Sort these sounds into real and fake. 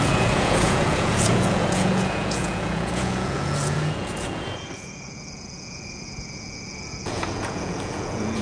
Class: fake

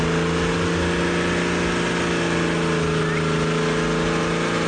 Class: real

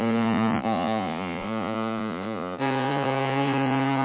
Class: fake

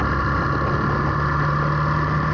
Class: real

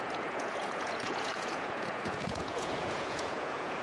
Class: fake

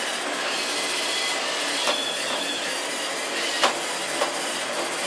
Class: real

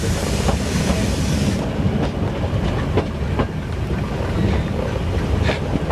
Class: real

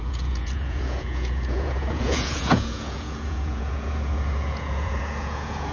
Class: fake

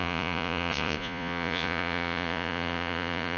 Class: fake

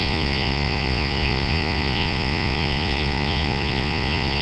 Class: fake